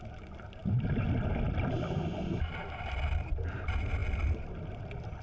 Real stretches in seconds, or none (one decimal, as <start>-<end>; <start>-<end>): 0.0-5.2